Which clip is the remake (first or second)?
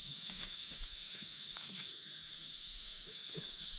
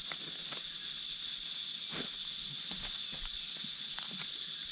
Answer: first